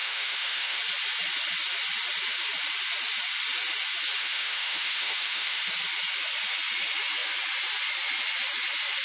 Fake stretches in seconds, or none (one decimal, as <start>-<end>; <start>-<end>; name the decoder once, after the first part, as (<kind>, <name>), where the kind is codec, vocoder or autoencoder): 0.0-0.8 (autoencoder, DAC-VAE); 4.2-5.7